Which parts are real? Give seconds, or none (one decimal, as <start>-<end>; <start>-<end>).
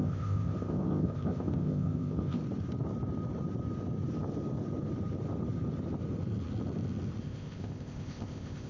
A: 2.4-7.2